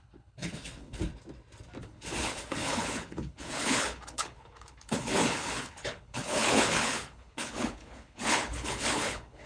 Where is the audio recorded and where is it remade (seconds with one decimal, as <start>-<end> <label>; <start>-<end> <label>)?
0.0-1.1 remade; 1.1-1.8 recorded; 1.8-9.5 remade

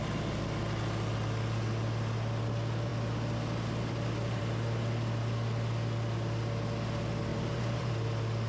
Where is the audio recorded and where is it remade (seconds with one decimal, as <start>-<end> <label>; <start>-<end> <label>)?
0.0-7.3 recorded; 7.3-7.9 remade; 7.9-8.5 recorded

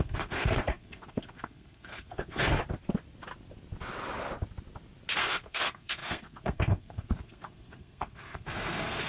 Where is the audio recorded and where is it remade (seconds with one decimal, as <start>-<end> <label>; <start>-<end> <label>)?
0.0-2.6 remade; 2.6-5.2 recorded; 5.2-9.1 remade

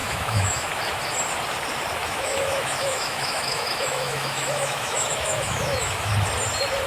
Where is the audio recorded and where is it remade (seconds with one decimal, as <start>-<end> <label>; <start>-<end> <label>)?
0.0-0.7 remade; 0.7-2.0 recorded; 2.0-6.1 remade; 6.1-6.9 recorded

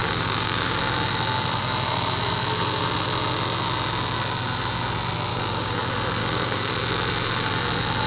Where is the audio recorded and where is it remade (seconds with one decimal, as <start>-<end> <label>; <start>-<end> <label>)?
0.0-0.8 remade; 0.8-5.3 recorded; 5.3-5.8 remade; 5.8-6.2 recorded; 6.2-6.7 remade; 6.7-8.1 recorded

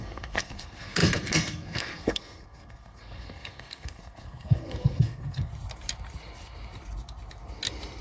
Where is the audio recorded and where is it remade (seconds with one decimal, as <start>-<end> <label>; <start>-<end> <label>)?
0.0-5.5 remade; 5.5-8.0 recorded

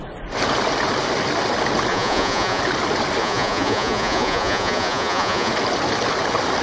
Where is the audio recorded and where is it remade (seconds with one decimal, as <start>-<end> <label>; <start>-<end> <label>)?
0.0-1.9 recorded; 1.9-2.6 remade; 2.6-3.2 recorded; 3.2-5.5 remade; 5.5-6.6 recorded